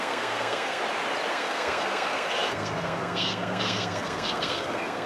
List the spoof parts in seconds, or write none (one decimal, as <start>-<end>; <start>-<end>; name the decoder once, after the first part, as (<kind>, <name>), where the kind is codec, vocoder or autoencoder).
0.0-0.8 (codec, SNAC); 1.3-5.1